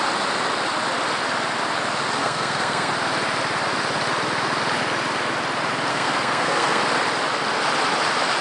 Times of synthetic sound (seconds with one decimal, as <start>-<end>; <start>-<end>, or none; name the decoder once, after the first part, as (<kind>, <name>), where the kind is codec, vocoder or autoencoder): 2.2-2.9 (codec, SNAC); 5.9-6.8